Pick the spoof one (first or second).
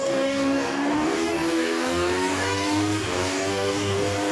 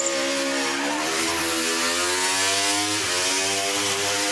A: first